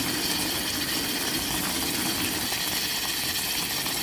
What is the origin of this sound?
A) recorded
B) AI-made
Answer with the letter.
A